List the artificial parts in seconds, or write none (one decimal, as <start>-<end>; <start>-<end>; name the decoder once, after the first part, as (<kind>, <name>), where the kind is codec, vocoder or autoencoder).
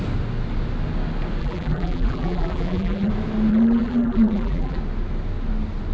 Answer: 1.4-3.1 (vocoder, BigVGAN v2); 3.5-4.8